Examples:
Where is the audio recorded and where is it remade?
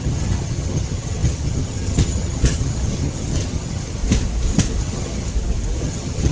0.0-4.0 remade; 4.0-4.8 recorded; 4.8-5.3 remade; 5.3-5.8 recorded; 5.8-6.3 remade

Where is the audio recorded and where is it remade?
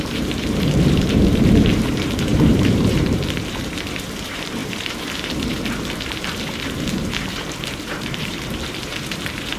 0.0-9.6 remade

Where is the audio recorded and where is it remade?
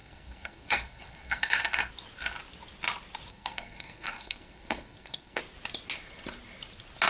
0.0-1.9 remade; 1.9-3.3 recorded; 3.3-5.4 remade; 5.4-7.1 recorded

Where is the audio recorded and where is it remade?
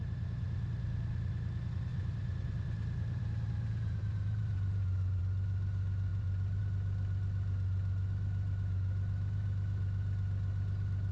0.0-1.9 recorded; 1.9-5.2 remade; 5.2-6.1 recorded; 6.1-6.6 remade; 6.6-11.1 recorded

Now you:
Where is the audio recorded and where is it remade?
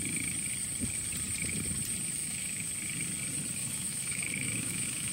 0.0-2.2 recorded; 2.2-2.7 remade; 2.7-3.6 recorded; 3.6-5.1 remade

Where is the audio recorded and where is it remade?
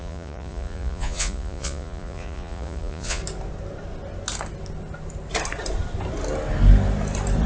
0.0-3.2 remade; 3.2-7.5 recorded